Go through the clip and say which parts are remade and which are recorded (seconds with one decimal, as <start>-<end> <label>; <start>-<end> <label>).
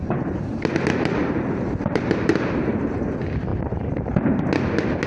0.0-1.2 recorded; 1.2-2.7 remade; 2.7-3.5 recorded; 3.5-4.4 remade; 4.4-5.1 recorded